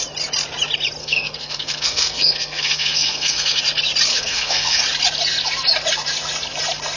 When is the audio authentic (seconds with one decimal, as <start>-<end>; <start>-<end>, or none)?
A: 0.0-1.0; 3.6-4.1; 4.8-7.0